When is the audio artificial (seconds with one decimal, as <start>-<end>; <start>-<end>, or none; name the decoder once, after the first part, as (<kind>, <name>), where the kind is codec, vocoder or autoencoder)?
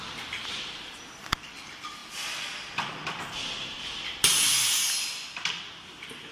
0.0-2.0 (vocoder, BigVGAN v2); 5.8-6.3